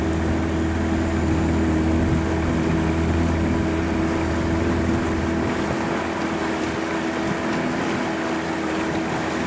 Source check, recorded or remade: recorded